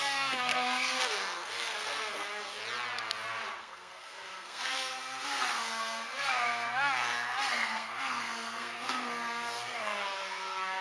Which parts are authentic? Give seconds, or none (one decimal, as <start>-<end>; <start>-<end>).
2.6-3.6